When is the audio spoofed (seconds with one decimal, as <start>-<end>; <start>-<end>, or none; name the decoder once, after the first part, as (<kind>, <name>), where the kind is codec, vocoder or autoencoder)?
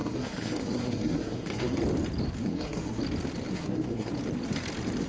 0.0-1.8 (codec, SNAC); 2.4-3.0; 3.5-4.1